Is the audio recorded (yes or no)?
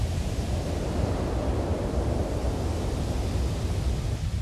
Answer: yes